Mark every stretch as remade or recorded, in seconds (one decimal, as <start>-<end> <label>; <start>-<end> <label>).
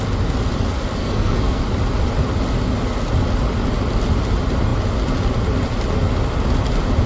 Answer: 0.0-1.0 recorded; 1.0-1.6 remade; 1.6-7.1 recorded